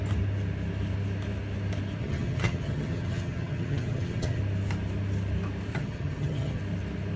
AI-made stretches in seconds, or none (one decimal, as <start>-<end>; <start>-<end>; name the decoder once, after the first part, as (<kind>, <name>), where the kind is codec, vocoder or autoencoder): 2.0-4.4 (vocoder, HiFi-GAN); 5.7-6.6